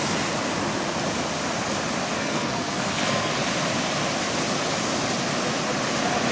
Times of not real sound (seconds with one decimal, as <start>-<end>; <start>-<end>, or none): 2.2-3.3